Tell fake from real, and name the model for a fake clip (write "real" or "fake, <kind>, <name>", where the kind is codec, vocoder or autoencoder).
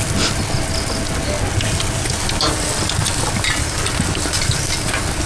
real